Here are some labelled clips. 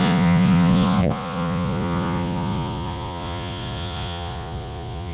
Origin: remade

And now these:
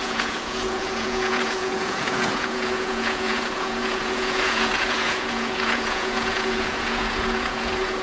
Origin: remade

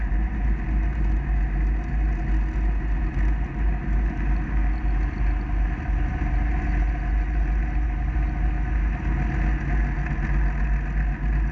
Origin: recorded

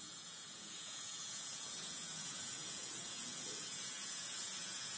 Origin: remade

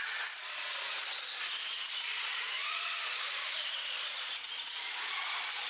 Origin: remade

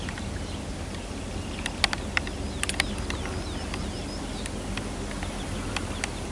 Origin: recorded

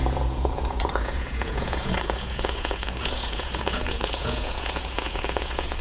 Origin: remade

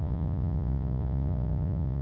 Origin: remade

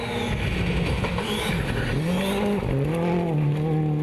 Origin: recorded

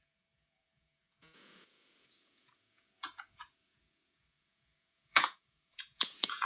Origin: remade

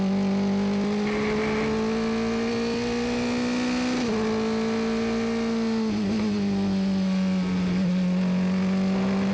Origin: recorded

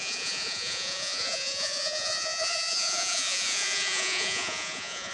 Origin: remade